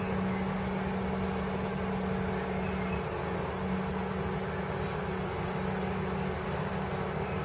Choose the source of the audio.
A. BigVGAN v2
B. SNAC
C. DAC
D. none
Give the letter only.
D